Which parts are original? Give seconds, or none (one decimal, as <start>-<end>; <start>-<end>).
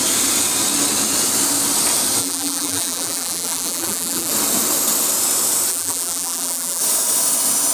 0.0-2.2; 4.3-5.7; 6.8-7.7